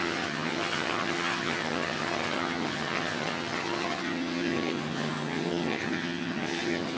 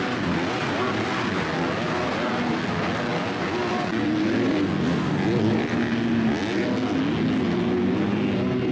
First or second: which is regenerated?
first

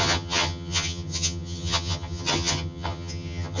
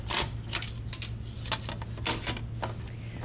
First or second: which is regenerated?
first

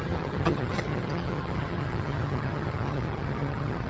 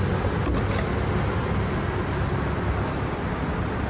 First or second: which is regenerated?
first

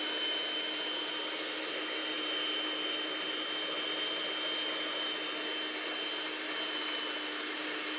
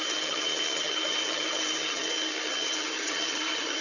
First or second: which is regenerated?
second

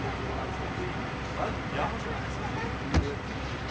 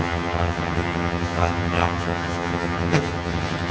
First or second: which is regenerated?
second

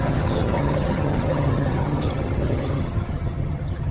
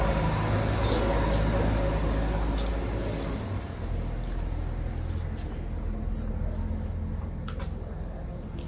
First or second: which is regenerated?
first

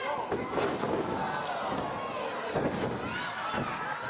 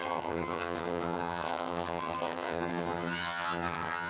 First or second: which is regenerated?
second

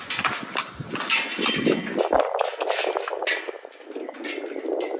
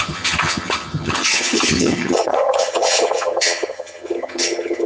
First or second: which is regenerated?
second